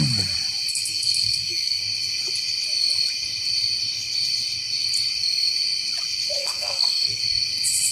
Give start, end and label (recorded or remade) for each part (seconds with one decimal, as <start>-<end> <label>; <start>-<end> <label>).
0.0-0.7 recorded; 0.7-1.8 remade; 1.8-6.4 recorded; 6.4-7.2 remade; 7.2-7.9 recorded